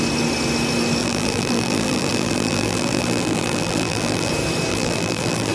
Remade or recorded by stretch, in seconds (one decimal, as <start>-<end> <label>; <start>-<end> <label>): 0.0-1.0 recorded; 1.0-4.3 remade; 4.3-4.7 recorded; 4.7-5.5 remade